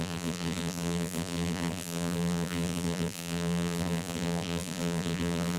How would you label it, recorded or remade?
remade